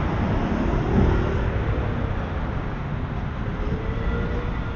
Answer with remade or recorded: recorded